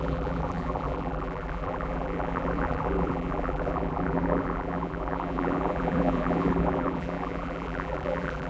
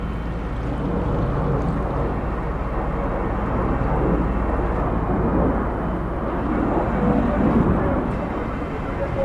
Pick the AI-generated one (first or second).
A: first